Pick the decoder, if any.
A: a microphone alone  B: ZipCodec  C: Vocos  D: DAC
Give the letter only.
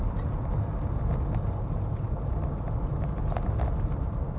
A